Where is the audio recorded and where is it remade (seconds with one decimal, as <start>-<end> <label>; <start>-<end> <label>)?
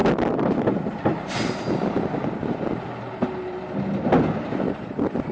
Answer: 0.0-5.3 recorded